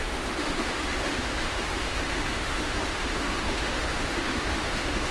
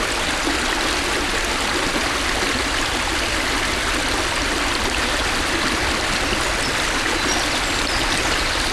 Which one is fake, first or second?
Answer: first